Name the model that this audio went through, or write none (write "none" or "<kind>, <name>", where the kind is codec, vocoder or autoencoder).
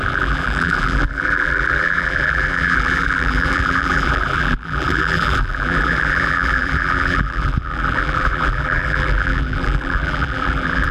vocoder, BigVGAN v2